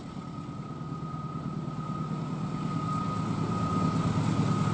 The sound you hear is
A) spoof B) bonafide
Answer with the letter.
B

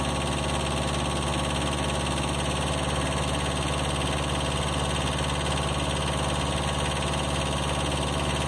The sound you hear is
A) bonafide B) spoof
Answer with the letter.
A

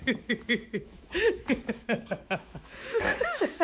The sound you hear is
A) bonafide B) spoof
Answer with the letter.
B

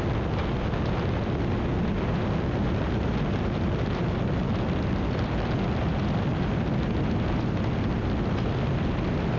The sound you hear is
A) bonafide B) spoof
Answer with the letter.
A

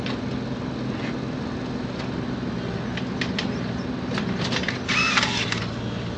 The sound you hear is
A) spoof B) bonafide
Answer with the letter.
B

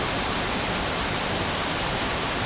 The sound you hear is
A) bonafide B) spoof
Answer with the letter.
A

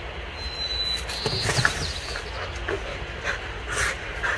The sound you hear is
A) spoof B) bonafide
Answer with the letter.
B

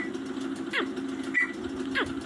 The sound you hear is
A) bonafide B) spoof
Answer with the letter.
A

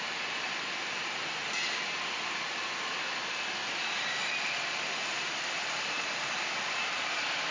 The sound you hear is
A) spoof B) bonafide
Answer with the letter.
A